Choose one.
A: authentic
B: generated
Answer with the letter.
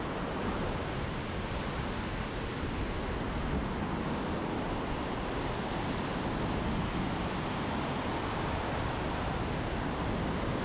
A